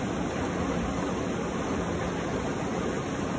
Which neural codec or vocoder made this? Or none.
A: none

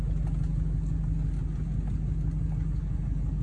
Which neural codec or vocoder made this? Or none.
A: none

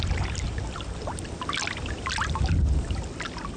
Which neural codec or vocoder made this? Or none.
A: none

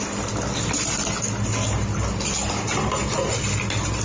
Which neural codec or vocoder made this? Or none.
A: none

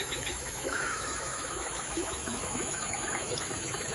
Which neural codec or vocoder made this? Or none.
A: autoencoder, DAC-VAE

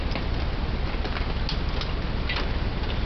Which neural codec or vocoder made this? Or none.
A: none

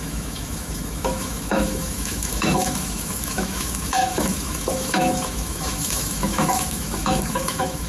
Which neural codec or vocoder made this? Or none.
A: autoencoder, DAC-VAE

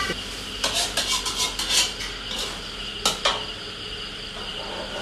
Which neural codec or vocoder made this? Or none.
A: none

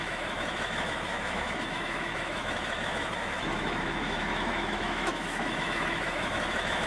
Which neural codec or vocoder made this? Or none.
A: autoencoder, DAC-VAE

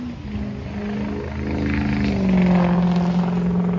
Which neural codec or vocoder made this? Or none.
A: none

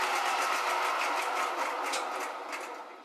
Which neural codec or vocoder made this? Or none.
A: none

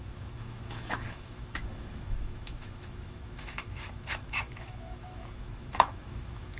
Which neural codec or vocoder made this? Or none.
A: autoencoder, DAC-VAE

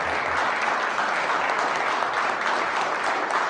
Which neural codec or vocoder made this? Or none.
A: none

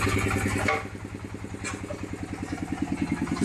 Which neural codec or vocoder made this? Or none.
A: none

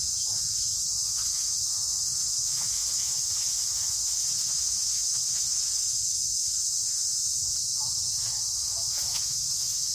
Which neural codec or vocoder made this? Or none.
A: autoencoder, DAC-VAE